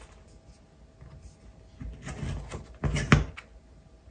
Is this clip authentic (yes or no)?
yes